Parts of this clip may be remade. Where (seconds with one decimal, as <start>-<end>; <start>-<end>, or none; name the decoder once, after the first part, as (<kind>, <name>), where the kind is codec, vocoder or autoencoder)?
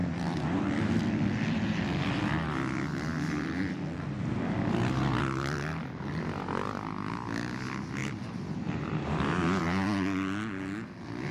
0.0-5.2 (vocoder, BigVGAN v2); 8.0-9.6